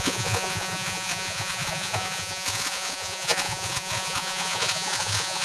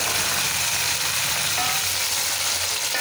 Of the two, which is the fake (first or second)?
first